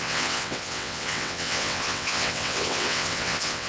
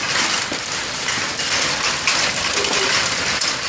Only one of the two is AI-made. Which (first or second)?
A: first